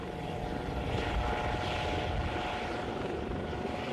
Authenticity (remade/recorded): recorded